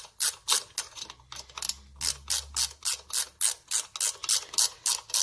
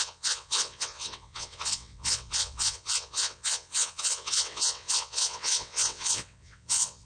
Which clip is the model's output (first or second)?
second